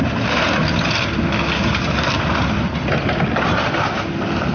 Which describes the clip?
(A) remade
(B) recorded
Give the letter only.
B